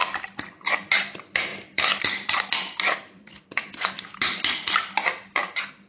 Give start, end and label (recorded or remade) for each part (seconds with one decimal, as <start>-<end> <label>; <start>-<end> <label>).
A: 0.0-0.5 remade; 0.5-1.5 recorded; 1.5-4.0 remade; 4.0-5.9 recorded